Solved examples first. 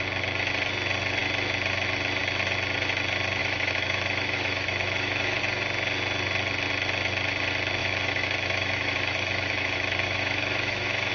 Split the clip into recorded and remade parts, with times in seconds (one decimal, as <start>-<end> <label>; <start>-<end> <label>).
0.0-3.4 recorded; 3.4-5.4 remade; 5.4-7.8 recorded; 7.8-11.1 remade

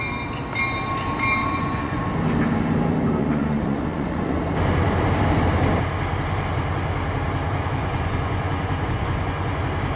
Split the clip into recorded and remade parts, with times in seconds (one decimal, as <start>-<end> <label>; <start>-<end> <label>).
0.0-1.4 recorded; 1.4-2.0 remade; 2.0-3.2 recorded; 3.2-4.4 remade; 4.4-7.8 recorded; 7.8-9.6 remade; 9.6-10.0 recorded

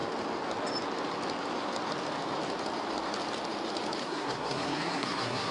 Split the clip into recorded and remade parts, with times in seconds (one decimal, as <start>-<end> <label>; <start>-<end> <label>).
0.0-4.0 recorded; 4.0-5.5 remade